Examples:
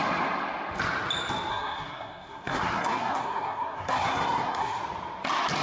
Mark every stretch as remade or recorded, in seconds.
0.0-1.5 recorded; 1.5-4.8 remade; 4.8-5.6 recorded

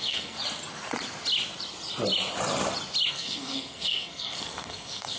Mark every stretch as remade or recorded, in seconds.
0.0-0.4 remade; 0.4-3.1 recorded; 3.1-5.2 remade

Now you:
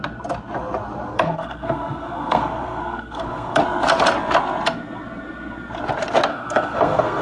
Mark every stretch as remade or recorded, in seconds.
0.0-1.1 recorded; 1.1-3.6 remade; 3.6-6.3 recorded; 6.3-7.2 remade

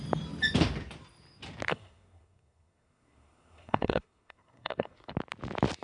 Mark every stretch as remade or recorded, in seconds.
0.0-1.7 recorded; 1.7-5.1 remade; 5.1-5.8 recorded

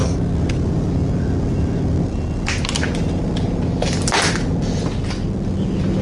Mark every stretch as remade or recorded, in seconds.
0.0-6.0 recorded